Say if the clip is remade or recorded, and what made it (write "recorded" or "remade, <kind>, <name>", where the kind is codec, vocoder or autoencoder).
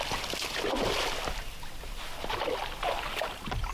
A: recorded